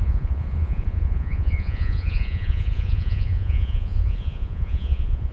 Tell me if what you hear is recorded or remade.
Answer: remade